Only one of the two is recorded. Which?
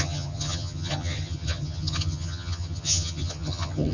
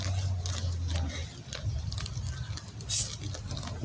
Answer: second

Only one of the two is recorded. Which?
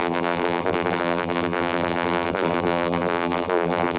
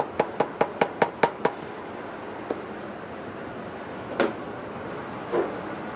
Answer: second